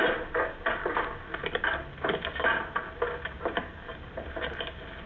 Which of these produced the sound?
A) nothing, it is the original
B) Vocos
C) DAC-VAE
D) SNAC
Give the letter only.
A